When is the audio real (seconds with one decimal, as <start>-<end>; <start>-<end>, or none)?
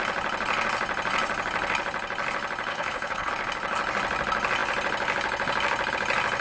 0.0-2.7; 3.3-6.4